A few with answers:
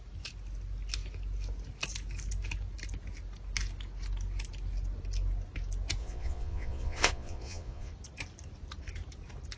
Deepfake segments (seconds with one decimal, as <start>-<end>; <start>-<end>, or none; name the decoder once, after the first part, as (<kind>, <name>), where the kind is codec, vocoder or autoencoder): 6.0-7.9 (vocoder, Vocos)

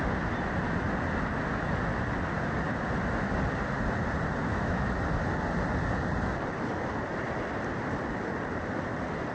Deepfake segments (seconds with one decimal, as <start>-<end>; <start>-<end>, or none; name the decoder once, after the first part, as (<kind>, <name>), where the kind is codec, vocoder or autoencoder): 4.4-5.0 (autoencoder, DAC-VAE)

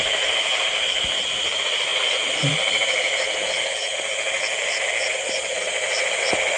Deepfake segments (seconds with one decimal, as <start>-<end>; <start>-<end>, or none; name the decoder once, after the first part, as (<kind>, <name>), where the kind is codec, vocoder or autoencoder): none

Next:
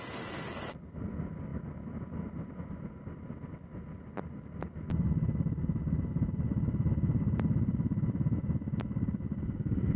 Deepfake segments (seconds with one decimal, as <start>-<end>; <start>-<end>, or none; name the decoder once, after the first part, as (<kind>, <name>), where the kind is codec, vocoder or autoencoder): none

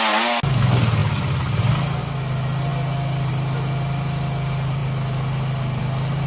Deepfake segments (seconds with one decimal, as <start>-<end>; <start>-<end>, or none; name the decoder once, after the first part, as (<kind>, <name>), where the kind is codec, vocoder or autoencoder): none

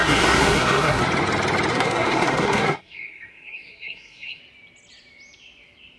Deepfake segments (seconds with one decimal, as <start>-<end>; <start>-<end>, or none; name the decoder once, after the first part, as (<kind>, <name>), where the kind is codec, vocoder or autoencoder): 0.0-1.0 (codec, SNAC); 1.7-4.4

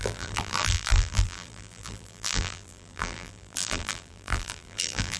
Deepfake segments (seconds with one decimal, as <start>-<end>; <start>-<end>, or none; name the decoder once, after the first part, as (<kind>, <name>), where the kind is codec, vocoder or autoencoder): 0.0-5.2 (vocoder, BigVGAN v2)

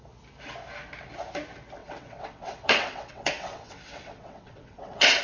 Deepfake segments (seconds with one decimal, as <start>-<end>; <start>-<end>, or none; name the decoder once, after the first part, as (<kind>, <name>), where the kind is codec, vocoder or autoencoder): 1.8-5.2 (vocoder, WaveNeXt)